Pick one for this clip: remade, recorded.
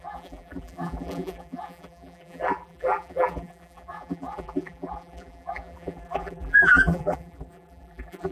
remade